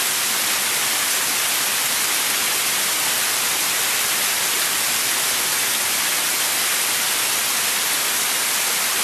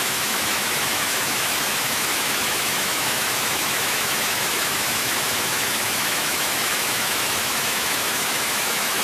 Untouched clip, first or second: first